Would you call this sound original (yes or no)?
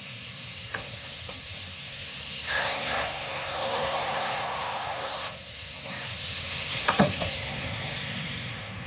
no